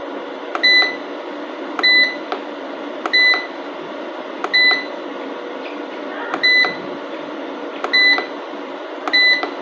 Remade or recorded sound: recorded